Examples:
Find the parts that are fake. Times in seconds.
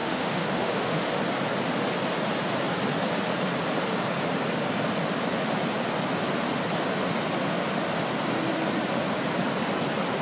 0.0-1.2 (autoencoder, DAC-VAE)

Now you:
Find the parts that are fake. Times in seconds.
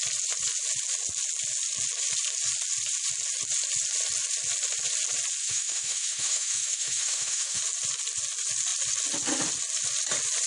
5.4-7.6 (autoencoder, DAC-VAE)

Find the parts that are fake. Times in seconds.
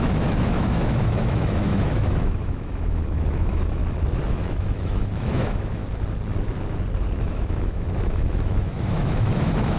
0.0-3.8 (autoencoder, DAC-VAE); 4.3-5.8; 7.2-9.8